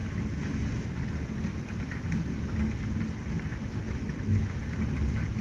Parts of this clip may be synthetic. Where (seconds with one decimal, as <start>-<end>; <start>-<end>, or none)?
3.5-4.6